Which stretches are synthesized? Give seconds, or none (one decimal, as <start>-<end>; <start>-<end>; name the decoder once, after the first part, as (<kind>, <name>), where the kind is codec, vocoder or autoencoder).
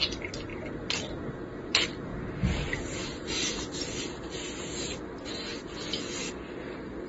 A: none